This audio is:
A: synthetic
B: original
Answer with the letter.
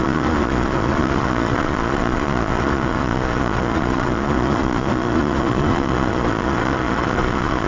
A